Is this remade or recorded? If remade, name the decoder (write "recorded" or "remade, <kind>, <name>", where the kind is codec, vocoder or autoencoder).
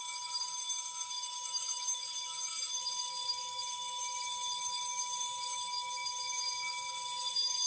remade, autoencoder, DAC-VAE